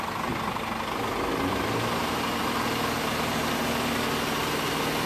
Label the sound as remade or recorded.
recorded